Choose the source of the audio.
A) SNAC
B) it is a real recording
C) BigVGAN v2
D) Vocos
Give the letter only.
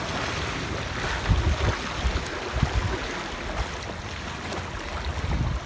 B